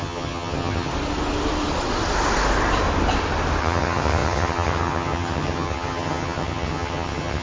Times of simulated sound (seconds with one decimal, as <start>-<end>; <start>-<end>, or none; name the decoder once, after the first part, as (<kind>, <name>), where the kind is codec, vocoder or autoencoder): 0.0-0.9 (vocoder, HiFi-GAN); 3.6-7.4